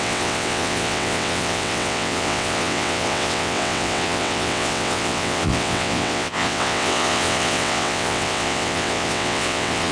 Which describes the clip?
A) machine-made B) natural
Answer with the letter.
A